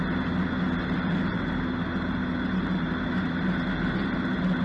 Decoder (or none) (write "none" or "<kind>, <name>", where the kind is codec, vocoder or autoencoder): none